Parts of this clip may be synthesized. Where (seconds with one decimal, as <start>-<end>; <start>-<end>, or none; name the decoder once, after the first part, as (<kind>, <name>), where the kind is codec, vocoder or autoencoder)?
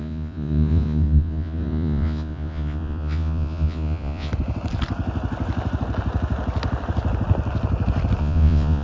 0.0-4.3 (vocoder, Vocos); 8.2-8.8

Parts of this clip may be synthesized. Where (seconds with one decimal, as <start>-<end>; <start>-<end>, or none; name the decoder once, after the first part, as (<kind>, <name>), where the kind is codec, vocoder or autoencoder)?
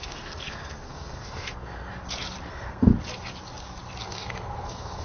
0.0-1.9 (codec, SNAC); 2.5-2.9; 4.0-5.0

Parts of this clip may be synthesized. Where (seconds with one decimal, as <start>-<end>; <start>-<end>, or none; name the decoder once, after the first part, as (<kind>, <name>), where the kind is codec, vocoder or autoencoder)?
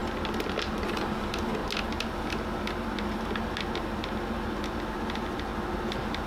0.7-1.6 (vocoder, BigVGAN v2); 4.9-5.5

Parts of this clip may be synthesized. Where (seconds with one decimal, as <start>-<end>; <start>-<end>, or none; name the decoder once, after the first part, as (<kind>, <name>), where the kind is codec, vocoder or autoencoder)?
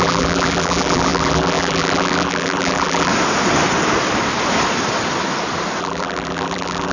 0.0-3.1 (vocoder, BigVGAN v2); 5.8-6.9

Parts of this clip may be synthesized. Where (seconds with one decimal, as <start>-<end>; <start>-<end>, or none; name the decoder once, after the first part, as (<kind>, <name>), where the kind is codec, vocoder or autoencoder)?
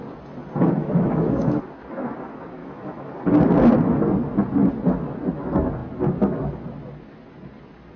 0.8-1.6 (autoencoder, DAC-VAE); 2.6-3.1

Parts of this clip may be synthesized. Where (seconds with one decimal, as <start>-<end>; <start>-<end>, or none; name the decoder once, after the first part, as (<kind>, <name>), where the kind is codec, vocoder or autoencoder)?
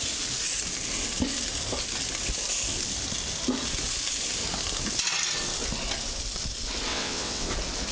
6.9-7.5 (vocoder, WaveNeXt)